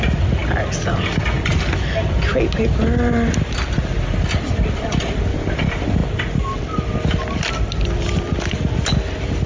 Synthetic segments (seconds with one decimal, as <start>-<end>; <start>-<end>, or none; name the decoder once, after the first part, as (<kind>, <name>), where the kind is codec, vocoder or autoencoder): none